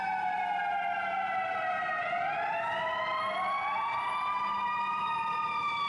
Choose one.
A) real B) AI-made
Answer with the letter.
A